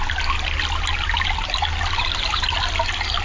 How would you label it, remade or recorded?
recorded